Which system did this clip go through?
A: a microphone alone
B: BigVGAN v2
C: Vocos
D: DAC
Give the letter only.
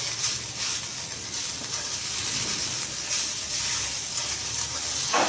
A